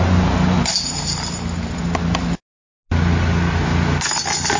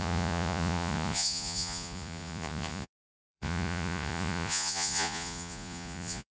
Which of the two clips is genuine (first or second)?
first